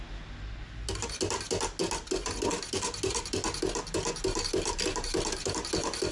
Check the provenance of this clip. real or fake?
real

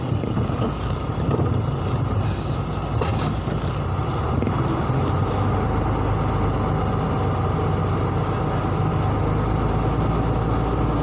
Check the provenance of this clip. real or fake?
real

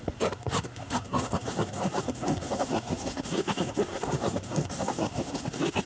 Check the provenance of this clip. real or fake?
fake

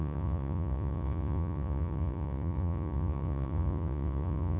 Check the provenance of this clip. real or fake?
fake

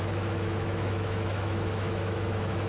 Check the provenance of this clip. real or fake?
fake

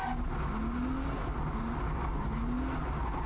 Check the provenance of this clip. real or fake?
real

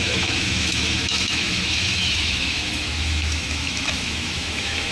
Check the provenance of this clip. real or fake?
fake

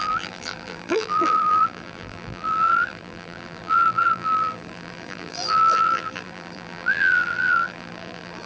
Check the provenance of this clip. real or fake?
fake